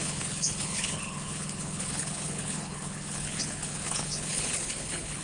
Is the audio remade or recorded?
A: remade